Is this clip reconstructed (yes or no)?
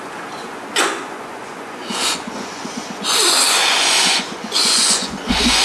yes